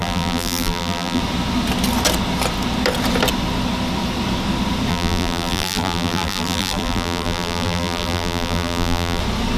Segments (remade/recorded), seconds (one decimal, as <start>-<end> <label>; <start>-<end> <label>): 0.0-1.2 remade; 1.2-4.9 recorded; 4.9-9.2 remade; 9.2-9.6 recorded

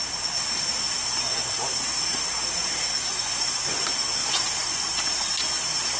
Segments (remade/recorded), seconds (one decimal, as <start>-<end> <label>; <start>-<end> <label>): 0.0-3.1 recorded; 3.1-3.8 remade; 3.8-4.2 recorded; 4.2-4.9 remade; 4.9-6.0 recorded

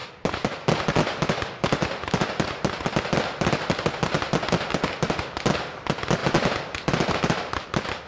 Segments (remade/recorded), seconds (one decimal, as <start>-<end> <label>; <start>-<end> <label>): 0.0-8.1 recorded

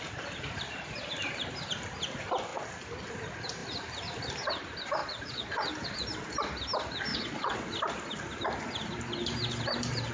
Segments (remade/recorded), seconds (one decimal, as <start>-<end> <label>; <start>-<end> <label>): 0.0-5.0 recorded; 5.0-5.7 remade; 5.7-7.1 recorded; 7.1-7.7 remade; 7.7-10.1 recorded